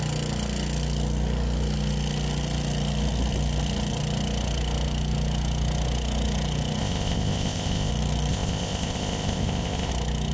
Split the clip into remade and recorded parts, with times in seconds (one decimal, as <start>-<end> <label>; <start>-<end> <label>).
0.0-6.8 recorded; 6.8-7.9 remade; 7.9-8.3 recorded; 8.3-9.9 remade; 9.9-10.3 recorded